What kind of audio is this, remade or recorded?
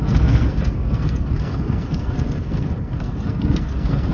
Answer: remade